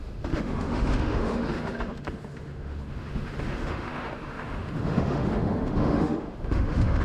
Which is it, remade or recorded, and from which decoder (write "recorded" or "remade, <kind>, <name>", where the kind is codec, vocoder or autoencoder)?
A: remade, autoencoder, DAC-VAE